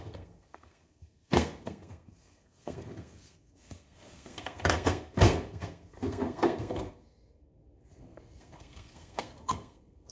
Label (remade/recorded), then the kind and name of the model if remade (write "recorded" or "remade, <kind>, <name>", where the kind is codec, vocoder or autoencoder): remade, codec, SNAC